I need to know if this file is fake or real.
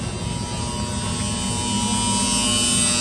real